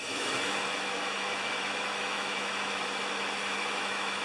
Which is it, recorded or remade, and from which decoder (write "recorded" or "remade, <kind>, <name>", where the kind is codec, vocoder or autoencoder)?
remade, autoencoder, DAC-VAE